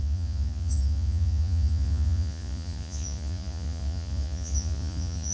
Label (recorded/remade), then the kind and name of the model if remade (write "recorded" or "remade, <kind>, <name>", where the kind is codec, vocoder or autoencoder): remade, vocoder, Vocos